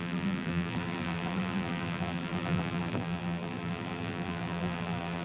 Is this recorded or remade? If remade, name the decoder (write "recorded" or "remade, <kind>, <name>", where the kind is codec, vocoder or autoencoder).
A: remade, vocoder, BigVGAN v2